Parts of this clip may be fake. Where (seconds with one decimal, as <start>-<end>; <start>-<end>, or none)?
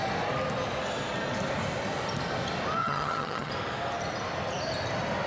2.8-3.5